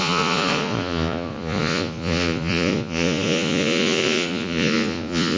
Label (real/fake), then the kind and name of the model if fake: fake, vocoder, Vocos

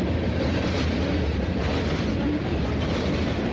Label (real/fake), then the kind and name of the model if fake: real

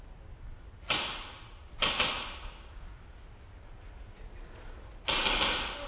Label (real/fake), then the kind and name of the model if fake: real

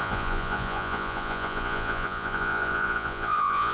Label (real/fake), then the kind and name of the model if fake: fake, vocoder, Vocos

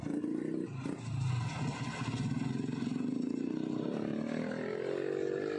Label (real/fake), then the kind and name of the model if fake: real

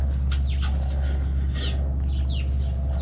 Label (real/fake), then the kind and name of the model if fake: real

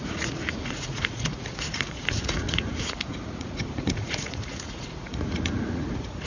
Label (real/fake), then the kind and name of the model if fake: fake, vocoder, Vocos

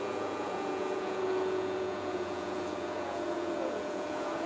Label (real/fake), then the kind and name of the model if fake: fake, vocoder, Vocos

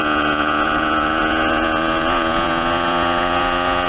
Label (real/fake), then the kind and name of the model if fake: fake, vocoder, Vocos